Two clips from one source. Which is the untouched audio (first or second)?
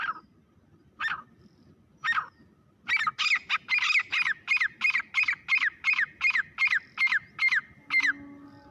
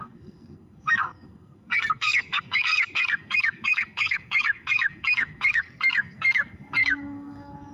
first